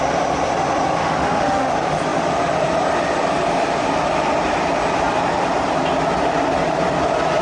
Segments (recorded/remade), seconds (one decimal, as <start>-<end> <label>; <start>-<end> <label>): 0.0-1.0 recorded; 1.0-1.7 remade; 1.7-7.4 recorded